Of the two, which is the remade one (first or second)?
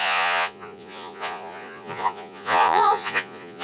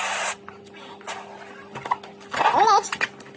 first